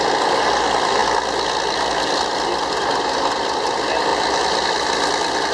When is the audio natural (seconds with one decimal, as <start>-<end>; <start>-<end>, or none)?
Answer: 0.0-5.5